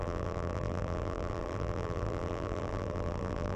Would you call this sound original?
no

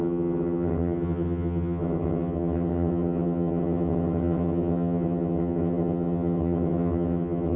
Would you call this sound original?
no